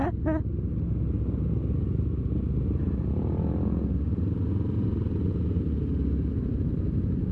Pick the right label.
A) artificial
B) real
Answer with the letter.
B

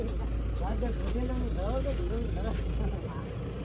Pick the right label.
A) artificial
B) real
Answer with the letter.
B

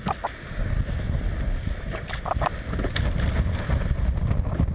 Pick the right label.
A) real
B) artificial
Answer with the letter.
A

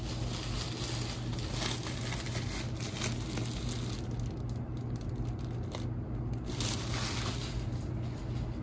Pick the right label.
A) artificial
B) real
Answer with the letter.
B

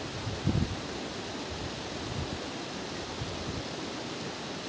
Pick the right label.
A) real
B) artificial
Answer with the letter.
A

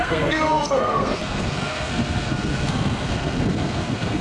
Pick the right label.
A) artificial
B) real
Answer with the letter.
A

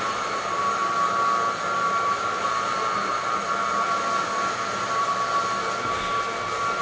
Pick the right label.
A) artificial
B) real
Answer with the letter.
B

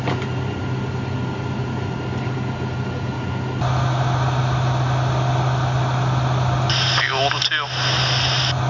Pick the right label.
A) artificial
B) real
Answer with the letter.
B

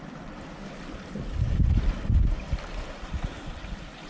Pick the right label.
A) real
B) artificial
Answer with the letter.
A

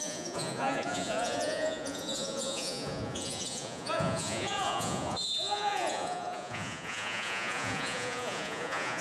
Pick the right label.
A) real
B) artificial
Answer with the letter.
B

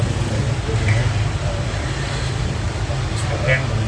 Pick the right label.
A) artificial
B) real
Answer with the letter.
B